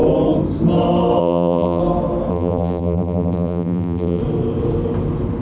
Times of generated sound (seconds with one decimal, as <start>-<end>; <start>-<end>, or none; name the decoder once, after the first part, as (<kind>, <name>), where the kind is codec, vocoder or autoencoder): 1.2-1.8 (vocoder, BigVGAN v2); 2.3-4.2